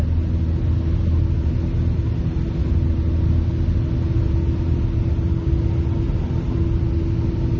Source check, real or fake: real